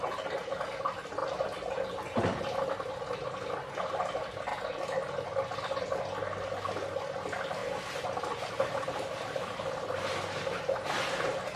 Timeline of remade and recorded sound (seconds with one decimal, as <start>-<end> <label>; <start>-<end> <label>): 0.0-11.6 recorded

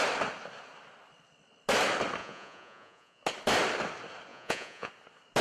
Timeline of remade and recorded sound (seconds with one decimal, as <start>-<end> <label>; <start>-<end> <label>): 0.0-2.2 recorded; 2.2-3.2 remade; 3.2-4.3 recorded; 4.3-4.9 remade; 4.9-5.4 recorded